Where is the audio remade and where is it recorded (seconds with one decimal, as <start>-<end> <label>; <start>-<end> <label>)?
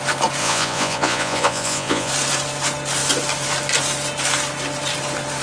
0.0-0.4 recorded; 0.4-2.1 remade; 2.1-5.4 recorded